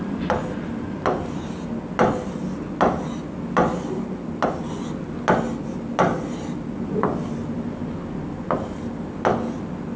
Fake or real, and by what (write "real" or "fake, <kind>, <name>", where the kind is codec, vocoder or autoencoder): real